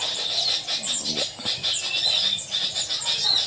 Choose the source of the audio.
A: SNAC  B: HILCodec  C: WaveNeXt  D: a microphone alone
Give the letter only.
D